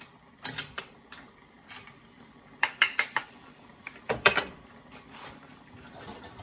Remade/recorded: remade